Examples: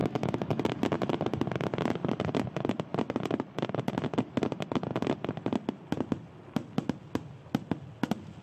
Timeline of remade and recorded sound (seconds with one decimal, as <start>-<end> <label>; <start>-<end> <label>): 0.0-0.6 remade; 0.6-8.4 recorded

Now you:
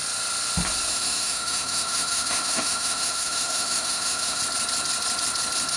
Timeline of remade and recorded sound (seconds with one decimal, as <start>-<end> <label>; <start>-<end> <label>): 0.0-0.9 recorded; 0.9-4.4 remade; 4.4-5.8 recorded

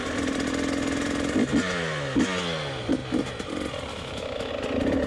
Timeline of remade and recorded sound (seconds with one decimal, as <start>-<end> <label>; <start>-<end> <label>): 0.0-3.9 recorded; 3.9-4.5 remade; 4.5-5.1 recorded